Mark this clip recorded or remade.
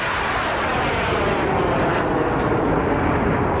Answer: recorded